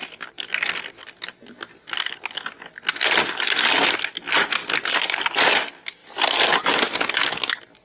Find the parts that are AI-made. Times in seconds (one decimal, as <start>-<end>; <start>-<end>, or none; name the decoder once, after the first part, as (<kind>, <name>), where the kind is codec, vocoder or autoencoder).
none